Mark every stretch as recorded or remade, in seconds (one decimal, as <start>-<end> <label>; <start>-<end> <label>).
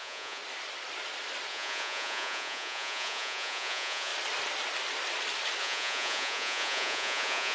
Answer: 0.0-0.4 remade; 0.4-1.5 recorded; 1.5-4.1 remade; 4.1-5.6 recorded; 5.6-7.5 remade